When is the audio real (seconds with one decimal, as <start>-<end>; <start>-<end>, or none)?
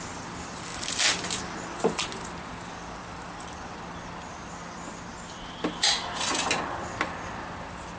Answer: 0.0-8.0